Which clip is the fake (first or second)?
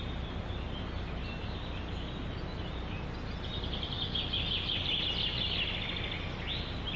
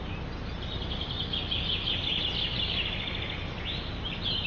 second